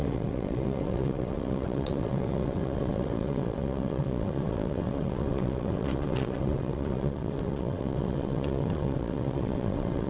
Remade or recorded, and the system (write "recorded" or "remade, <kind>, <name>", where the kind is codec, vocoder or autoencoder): remade, vocoder, WaveNeXt